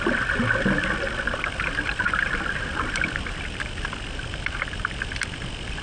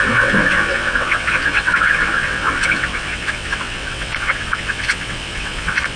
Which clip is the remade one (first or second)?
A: second